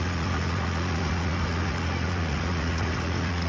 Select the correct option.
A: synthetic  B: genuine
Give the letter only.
A